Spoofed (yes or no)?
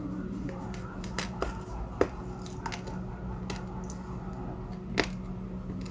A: no